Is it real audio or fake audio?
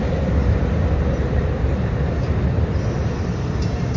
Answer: real